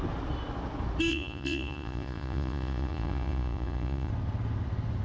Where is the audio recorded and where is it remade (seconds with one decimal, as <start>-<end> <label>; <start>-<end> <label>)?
0.0-1.1 recorded; 1.1-4.1 remade; 4.1-5.0 recorded